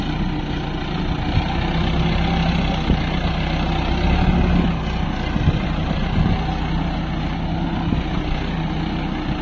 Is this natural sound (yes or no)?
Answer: yes